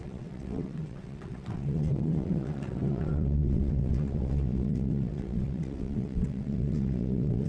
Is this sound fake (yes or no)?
yes